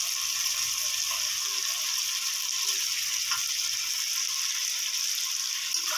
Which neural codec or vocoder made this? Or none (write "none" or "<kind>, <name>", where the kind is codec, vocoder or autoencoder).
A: none